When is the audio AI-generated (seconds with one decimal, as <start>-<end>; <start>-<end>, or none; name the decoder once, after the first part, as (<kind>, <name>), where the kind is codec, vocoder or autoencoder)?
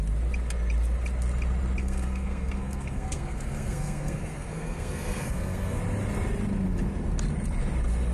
1.8-5.8 (codec, SNAC)